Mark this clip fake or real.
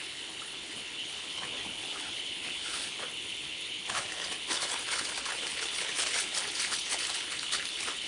fake